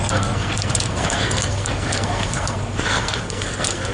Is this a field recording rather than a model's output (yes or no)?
no